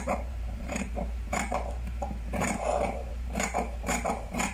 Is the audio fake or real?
fake